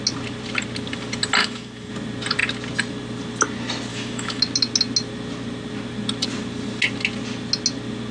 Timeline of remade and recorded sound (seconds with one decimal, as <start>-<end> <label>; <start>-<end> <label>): 0.0-1.4 recorded; 1.4-1.9 remade; 1.9-3.9 recorded; 3.9-4.4 remade; 4.4-8.1 recorded